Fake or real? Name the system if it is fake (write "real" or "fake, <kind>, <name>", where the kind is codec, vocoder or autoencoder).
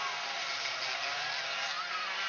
real